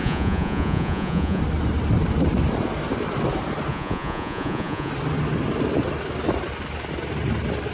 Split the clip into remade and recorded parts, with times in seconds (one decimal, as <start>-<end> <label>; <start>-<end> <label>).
0.0-1.4 remade; 1.4-3.7 recorded; 3.7-4.9 remade; 4.9-7.7 recorded